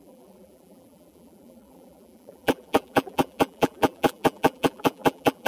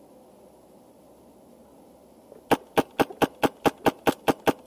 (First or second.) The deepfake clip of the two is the first